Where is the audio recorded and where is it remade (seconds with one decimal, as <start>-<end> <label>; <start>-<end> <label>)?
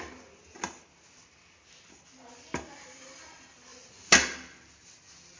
0.0-5.4 recorded